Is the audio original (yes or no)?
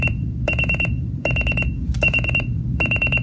no